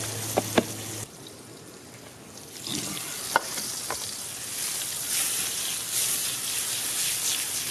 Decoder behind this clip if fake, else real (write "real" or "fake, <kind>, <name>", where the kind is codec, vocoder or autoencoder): real